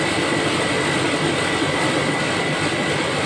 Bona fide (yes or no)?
yes